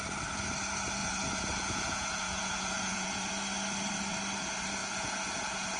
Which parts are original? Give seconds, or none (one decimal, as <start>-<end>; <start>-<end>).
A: 0.0-1.0; 3.3-4.8